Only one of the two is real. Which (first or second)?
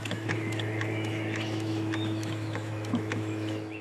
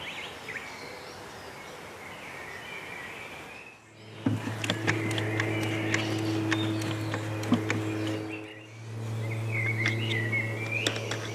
second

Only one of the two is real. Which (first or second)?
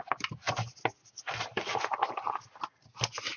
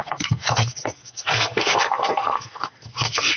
first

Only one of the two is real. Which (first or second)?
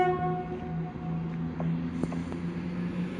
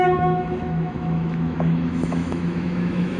first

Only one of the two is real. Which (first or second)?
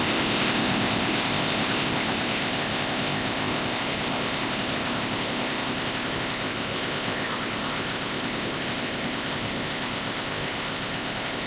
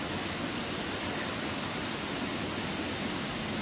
second